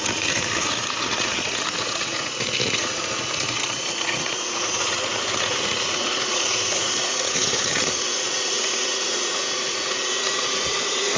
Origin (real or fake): fake